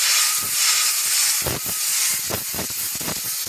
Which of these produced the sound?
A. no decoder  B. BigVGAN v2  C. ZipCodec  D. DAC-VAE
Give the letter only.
A